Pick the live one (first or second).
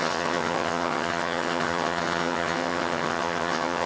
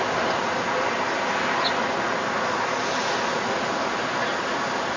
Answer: second